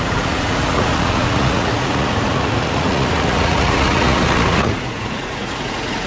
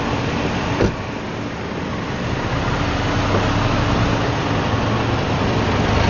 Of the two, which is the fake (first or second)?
first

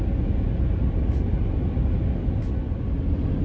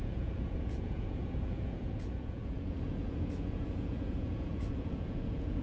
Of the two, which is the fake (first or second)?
second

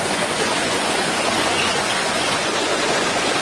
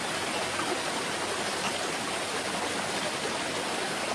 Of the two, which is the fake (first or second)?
first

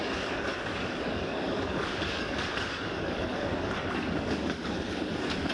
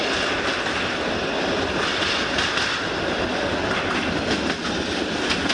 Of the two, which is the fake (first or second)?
first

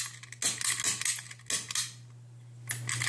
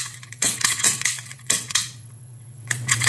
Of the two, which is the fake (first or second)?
second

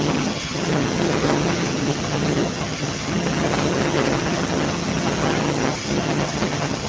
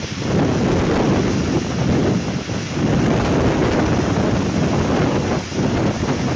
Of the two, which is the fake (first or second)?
first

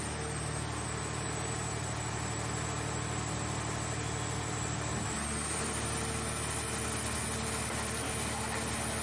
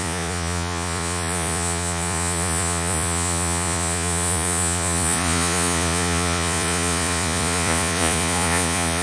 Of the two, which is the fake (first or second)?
second